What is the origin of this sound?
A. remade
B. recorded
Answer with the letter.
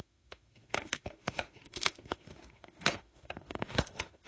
A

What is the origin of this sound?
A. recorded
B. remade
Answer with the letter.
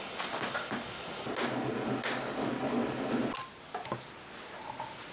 A